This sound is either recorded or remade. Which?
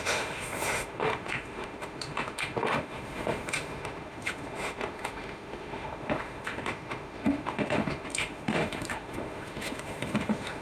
remade